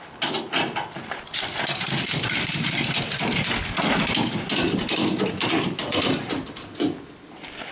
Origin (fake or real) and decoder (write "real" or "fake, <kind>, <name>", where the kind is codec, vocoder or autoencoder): fake, vocoder, BigVGAN v2